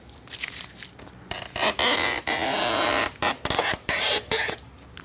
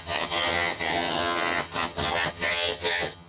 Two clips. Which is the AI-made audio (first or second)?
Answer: second